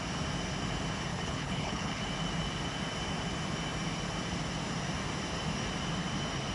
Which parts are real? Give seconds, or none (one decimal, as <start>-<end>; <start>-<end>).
0.0-1.1; 2.0-6.5

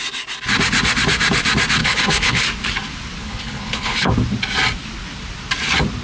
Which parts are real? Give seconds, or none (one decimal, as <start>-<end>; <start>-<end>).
0.0-1.8; 2.4-3.2; 4.1-6.0

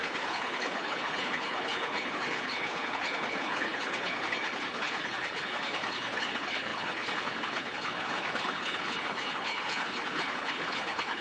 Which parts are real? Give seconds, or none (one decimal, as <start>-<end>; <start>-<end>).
none

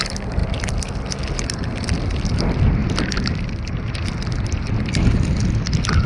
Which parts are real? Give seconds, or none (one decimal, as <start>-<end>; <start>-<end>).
0.0-6.1

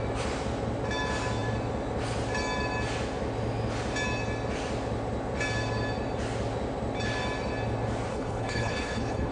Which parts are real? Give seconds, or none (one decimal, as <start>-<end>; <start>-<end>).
0.0-8.1

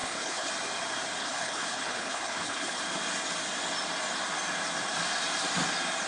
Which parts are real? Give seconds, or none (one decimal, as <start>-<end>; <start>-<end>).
0.5-1.2; 2.8-6.1